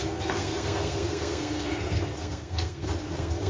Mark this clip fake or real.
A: fake